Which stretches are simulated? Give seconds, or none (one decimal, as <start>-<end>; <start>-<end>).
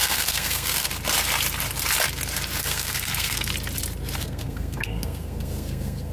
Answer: 0.0-0.9; 2.6-3.5; 4.2-6.1